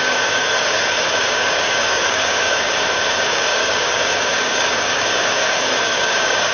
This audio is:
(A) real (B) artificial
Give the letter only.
B